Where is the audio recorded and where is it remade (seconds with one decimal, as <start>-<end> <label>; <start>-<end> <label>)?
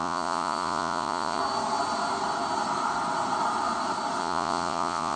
0.0-1.4 remade; 1.4-4.2 recorded; 4.2-5.2 remade